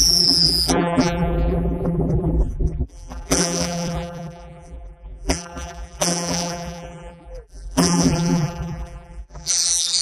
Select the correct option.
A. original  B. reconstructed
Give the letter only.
B